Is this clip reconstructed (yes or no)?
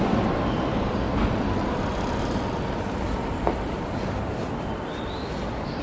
no